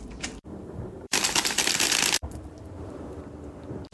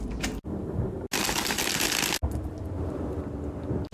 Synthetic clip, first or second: first